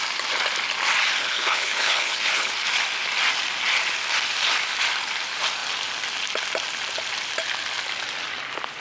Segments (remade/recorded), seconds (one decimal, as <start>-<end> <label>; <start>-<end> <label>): 0.0-1.2 recorded; 1.2-2.5 remade; 2.5-8.8 recorded